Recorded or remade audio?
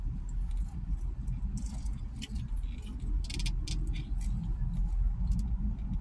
recorded